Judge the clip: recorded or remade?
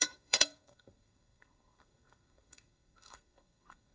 remade